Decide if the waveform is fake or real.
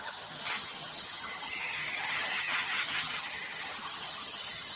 fake